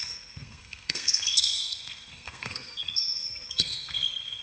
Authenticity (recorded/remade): remade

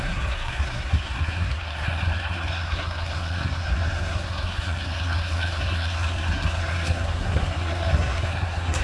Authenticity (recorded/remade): remade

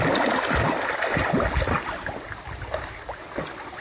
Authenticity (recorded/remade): recorded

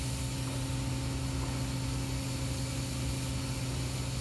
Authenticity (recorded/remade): recorded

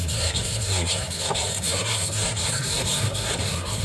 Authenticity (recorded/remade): remade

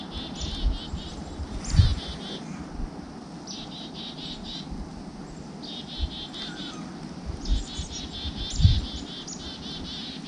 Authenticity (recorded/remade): recorded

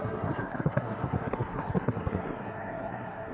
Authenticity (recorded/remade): remade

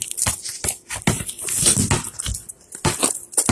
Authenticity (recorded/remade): recorded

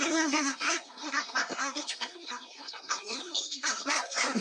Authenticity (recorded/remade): remade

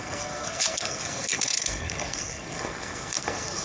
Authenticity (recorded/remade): remade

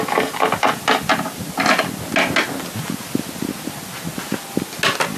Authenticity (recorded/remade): recorded